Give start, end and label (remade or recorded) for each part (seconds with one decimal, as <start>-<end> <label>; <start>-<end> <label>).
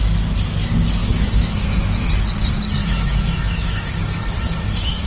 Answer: 0.0-1.0 recorded; 1.0-2.1 remade; 2.1-2.8 recorded; 2.8-4.2 remade; 4.2-5.1 recorded